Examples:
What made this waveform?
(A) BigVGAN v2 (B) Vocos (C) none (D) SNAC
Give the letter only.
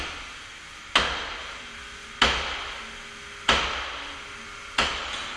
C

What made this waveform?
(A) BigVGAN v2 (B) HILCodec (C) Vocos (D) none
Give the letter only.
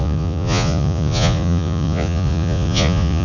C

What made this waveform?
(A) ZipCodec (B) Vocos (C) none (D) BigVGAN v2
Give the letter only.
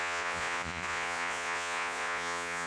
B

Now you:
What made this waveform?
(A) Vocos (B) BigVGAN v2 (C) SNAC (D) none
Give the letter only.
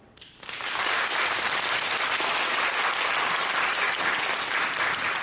D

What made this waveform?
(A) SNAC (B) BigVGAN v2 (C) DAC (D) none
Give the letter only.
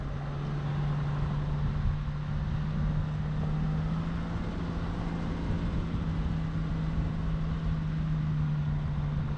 D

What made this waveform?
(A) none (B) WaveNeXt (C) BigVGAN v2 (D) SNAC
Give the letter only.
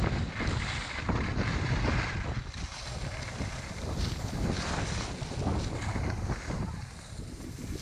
A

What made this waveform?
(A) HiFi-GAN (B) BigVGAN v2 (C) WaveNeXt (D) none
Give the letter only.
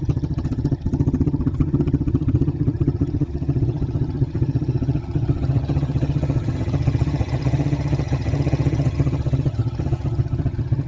A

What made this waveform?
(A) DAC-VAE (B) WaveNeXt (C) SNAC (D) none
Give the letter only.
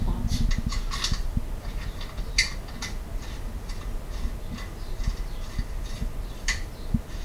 D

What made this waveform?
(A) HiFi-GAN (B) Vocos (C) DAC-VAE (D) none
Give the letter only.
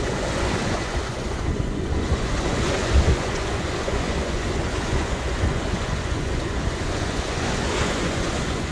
B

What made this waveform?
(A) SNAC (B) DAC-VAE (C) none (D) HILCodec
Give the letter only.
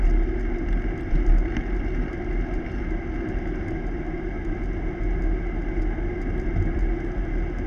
C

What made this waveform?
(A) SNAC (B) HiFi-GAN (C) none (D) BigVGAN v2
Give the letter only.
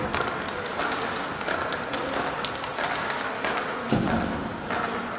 C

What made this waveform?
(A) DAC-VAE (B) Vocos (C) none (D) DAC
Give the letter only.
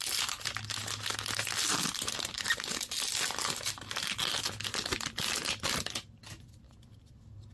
C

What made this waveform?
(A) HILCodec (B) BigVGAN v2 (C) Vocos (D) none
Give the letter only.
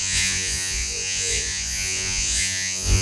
C